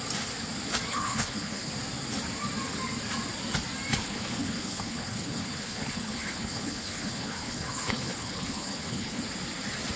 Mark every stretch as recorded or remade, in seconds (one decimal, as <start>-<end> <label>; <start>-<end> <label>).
0.0-0.9 recorded; 0.9-1.7 remade; 1.7-4.0 recorded; 4.0-9.2 remade; 9.2-10.0 recorded